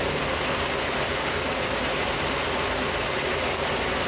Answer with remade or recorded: recorded